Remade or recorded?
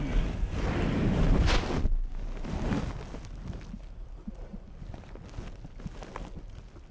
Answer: recorded